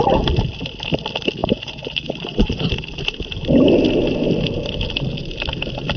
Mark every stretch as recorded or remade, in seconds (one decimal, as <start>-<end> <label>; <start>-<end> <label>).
0.0-1.4 recorded; 1.4-2.5 remade; 2.5-6.0 recorded